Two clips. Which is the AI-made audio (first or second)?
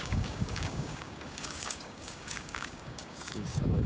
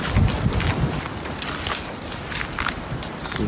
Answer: first